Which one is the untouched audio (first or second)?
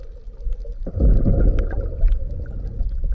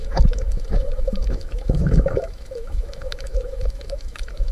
first